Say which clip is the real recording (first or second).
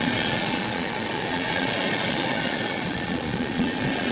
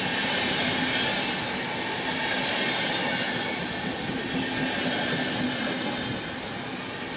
second